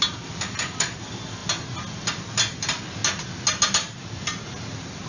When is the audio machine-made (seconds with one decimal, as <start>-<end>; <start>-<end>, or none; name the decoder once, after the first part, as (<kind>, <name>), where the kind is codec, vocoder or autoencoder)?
none